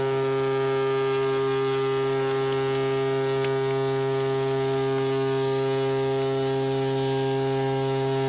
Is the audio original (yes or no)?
yes